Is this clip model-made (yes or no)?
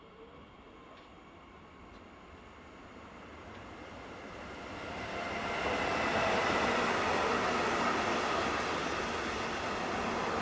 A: no